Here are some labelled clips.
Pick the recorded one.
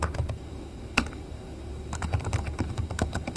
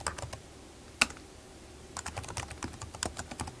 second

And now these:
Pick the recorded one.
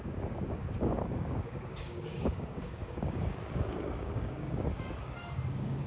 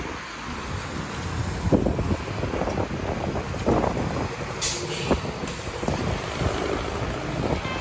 second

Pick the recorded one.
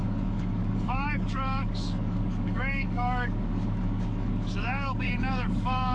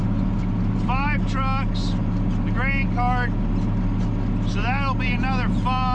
second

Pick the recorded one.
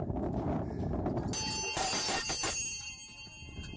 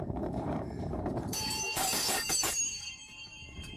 first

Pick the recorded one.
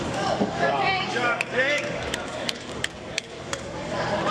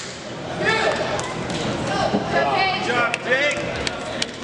second